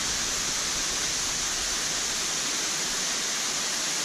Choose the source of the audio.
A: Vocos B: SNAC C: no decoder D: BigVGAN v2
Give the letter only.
C